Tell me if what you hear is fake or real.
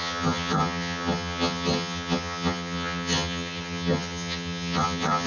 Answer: fake